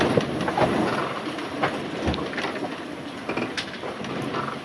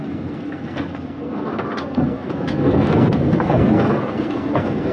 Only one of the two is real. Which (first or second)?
first